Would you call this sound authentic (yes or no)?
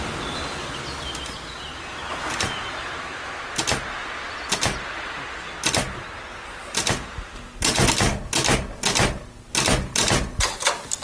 yes